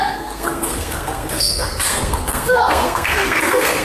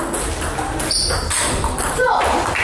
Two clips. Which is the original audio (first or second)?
second